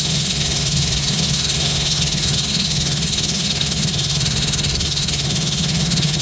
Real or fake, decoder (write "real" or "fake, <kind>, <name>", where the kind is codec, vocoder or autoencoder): fake, codec, SNAC